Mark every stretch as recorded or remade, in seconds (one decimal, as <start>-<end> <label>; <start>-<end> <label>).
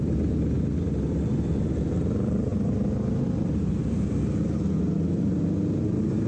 0.0-6.3 recorded